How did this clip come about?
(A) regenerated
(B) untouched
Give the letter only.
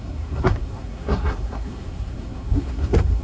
A